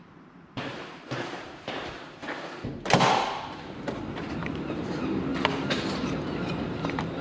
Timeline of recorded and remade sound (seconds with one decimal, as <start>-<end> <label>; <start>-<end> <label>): 0.0-2.7 remade; 2.7-4.2 recorded; 4.2-5.3 remade; 5.3-5.9 recorded; 5.9-7.2 remade